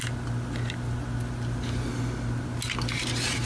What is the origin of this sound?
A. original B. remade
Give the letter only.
A